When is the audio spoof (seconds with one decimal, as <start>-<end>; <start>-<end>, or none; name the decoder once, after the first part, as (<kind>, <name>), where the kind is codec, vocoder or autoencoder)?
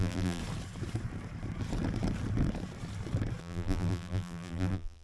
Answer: 0.0-0.4 (vocoder, BigVGAN v2); 3.4-5.0